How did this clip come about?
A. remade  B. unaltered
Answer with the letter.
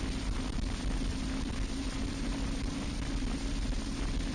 A